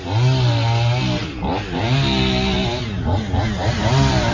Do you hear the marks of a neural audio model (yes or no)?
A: no